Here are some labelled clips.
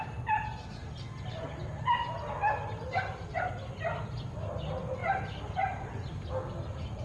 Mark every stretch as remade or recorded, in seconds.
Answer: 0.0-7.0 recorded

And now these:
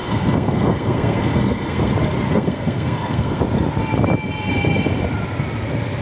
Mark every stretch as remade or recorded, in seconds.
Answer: 0.0-1.9 remade; 1.9-2.3 recorded; 2.3-3.4 remade; 3.4-6.0 recorded

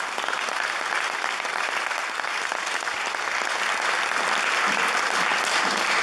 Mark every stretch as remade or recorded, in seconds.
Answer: 0.0-6.0 recorded

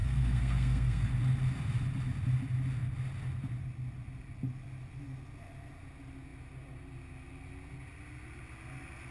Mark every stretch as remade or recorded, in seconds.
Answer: 0.0-1.1 remade; 1.1-9.1 recorded

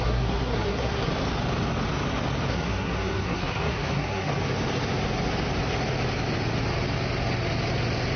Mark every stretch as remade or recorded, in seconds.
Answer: 0.0-1.1 remade; 1.1-2.5 recorded; 2.5-4.3 remade; 4.3-8.2 recorded

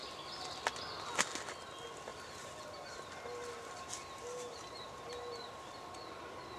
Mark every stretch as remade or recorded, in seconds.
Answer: 0.0-6.6 recorded